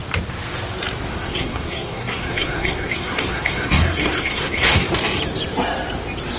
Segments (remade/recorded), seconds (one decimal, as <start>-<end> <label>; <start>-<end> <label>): 0.0-1.1 recorded; 1.1-4.9 remade; 4.9-6.4 recorded